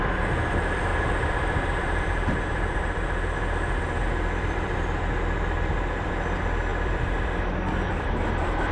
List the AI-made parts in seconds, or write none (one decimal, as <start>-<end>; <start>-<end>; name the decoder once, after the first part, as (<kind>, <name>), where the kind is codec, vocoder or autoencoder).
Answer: 0.9-6.1 (vocoder, BigVGAN v2); 6.7-8.7